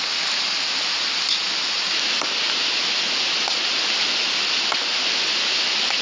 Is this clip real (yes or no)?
yes